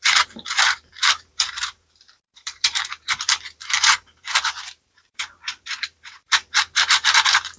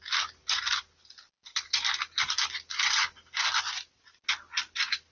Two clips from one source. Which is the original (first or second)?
second